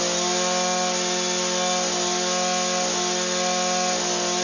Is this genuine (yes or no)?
yes